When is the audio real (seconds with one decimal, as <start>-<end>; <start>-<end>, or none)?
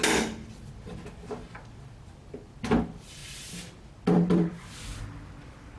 0.0-5.8